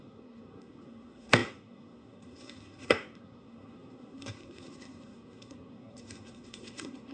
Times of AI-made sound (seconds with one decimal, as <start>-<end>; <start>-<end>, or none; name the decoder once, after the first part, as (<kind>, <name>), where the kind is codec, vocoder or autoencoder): 0.0-7.1 (codec, SNAC)